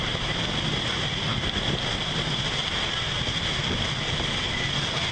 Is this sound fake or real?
real